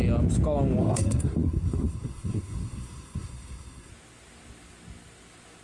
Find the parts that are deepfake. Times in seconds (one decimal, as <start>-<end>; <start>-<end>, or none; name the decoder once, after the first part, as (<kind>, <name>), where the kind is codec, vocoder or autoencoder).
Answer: 0.8-3.9 (codec, SNAC)